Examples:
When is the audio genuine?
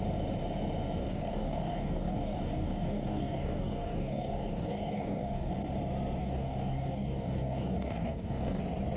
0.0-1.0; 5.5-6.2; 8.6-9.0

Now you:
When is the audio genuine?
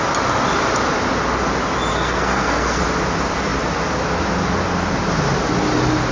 0.0-1.9; 2.8-6.1